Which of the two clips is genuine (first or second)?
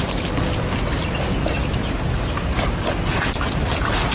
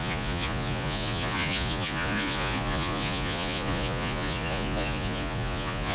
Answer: first